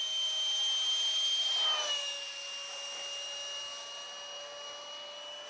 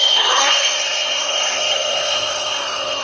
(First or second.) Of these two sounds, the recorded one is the first